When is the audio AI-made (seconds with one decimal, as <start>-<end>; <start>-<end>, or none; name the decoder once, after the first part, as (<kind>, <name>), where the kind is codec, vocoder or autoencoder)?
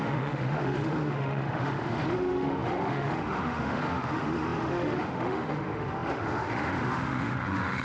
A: 0.0-7.8 (autoencoder, DAC-VAE)